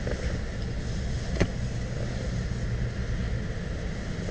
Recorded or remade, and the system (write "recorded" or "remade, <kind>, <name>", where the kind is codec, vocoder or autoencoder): recorded